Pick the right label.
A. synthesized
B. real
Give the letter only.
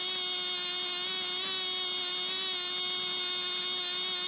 B